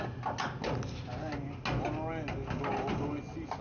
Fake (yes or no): no